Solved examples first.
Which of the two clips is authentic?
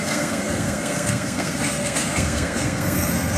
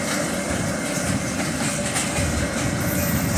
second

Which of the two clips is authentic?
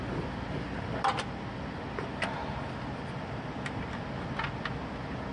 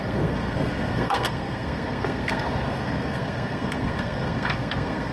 first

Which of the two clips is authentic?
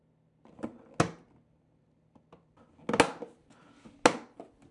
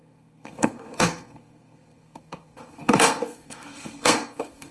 first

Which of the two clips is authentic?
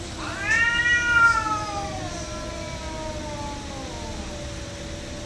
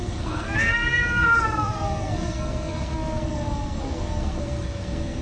first